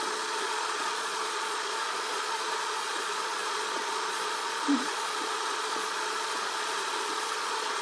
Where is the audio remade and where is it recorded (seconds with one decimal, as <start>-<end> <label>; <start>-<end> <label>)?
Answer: 0.0-7.8 remade